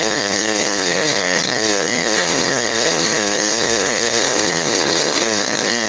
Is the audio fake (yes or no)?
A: yes